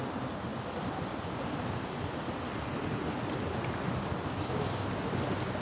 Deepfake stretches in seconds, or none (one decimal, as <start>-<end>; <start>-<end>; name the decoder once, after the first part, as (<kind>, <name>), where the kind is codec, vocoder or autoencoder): none